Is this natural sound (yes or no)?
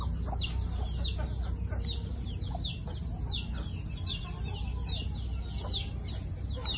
yes